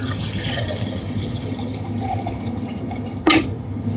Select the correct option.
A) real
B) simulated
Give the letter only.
B